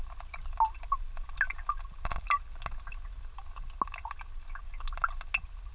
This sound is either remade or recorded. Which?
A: recorded